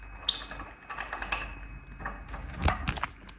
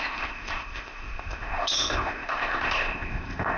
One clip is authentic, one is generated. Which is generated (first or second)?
second